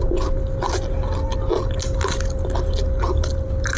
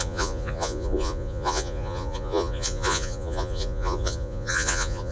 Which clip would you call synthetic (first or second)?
second